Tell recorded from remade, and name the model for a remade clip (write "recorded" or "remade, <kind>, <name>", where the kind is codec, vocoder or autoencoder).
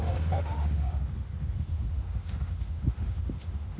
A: remade, autoencoder, DAC-VAE